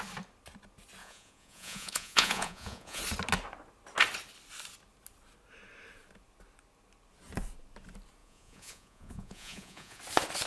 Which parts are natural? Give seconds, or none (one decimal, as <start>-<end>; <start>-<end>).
0.0-1.0; 3.0-8.2; 10.0-10.5